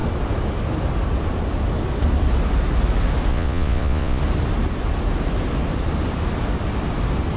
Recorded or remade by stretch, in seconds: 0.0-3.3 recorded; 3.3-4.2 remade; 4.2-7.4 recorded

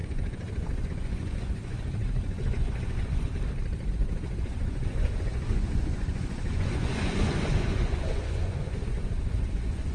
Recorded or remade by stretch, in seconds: 0.0-3.3 remade; 3.3-3.9 recorded; 3.9-9.9 remade

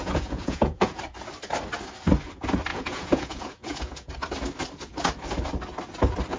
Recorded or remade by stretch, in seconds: 0.0-1.0 remade; 1.0-2.7 recorded; 2.7-4.1 remade; 4.1-6.4 recorded

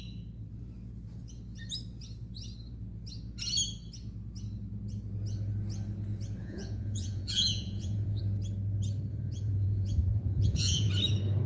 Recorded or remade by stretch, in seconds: 0.0-6.4 recorded; 6.4-8.2 remade; 8.2-9.1 recorded; 9.1-10.9 remade; 10.9-11.5 recorded

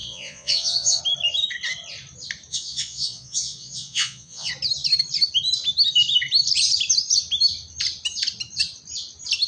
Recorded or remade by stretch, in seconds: 0.0-1.0 remade; 1.0-2.5 recorded; 2.5-4.5 remade; 4.5-9.5 recorded

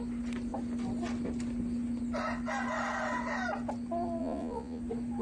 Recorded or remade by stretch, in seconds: 0.0-4.2 recorded; 4.2-4.8 remade; 4.8-5.2 recorded

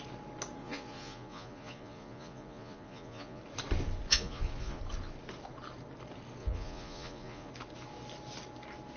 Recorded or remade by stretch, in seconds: 0.0-0.6 recorded; 0.6-3.4 remade; 3.4-4.1 recorded; 4.1-4.8 remade; 4.8-6.4 recorded; 6.4-7.5 remade; 7.5-9.0 recorded